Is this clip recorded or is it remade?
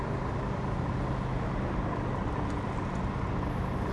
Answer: recorded